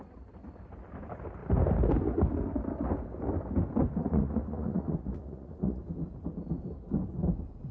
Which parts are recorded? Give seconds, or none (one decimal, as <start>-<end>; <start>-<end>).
0.0-4.0; 5.8-7.7